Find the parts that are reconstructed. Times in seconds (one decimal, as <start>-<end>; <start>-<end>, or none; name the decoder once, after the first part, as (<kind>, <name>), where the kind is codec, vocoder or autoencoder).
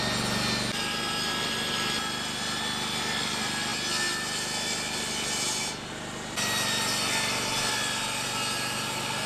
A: none